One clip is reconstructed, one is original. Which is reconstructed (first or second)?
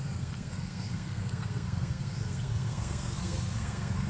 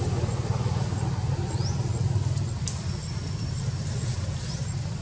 first